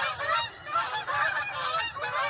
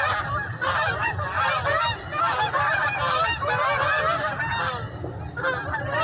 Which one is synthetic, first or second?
first